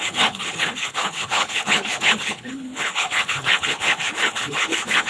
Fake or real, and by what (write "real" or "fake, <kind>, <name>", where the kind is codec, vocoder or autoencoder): fake, codec, HILCodec